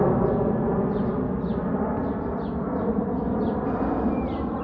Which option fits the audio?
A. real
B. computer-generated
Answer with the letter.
A